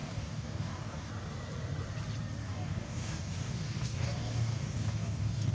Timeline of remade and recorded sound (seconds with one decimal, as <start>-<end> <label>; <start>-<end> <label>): 0.0-1.1 remade; 1.1-2.4 recorded; 2.4-5.5 remade